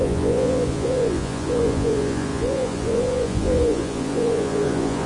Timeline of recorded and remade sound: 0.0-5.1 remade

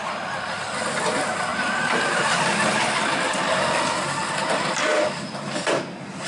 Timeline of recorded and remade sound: 0.0-6.3 recorded